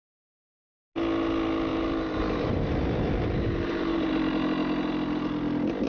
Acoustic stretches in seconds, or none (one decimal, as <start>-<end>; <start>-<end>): 0.0-1.7; 4.1-5.9